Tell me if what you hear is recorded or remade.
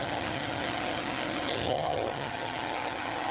remade